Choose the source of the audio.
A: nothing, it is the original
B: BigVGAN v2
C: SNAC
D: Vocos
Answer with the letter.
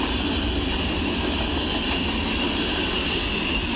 A